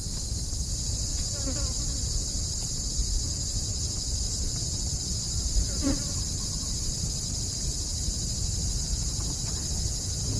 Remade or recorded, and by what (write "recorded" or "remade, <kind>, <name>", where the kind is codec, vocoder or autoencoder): remade, vocoder, BigVGAN v2